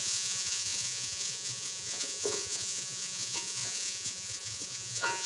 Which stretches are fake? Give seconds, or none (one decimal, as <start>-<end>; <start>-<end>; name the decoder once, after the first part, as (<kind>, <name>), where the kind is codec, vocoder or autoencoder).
0.0-5.3 (vocoder, Vocos)